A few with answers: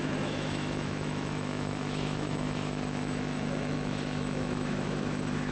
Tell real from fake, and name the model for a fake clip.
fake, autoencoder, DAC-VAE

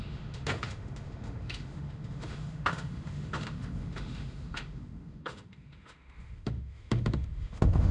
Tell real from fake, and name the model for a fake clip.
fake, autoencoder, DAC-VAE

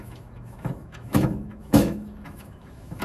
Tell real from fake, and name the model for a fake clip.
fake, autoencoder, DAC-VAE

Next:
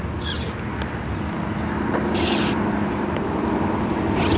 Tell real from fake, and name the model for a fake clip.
real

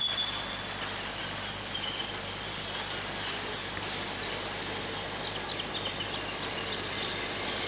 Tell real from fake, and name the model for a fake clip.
real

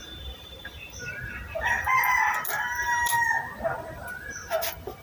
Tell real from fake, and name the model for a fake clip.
real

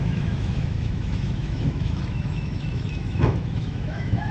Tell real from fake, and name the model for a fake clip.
fake, autoencoder, DAC-VAE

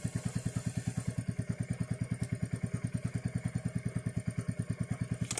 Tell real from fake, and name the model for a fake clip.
real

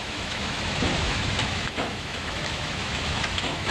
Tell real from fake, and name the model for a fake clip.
fake, autoencoder, DAC-VAE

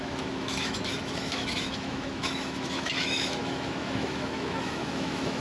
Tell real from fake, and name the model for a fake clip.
fake, autoencoder, DAC-VAE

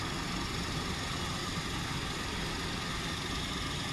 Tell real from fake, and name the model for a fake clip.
real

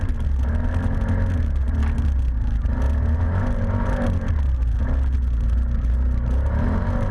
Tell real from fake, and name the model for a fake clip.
real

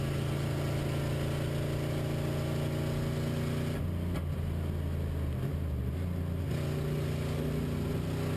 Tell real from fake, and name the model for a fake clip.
real